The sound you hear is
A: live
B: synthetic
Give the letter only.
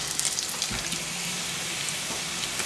A